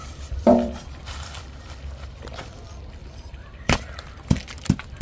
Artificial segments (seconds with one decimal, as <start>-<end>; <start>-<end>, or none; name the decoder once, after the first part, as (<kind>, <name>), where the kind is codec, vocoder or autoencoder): 0.0-1.4 (vocoder, BigVGAN v2); 3.0-4.5